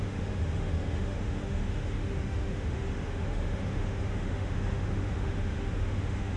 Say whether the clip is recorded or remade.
remade